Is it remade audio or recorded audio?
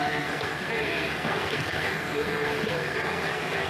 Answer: remade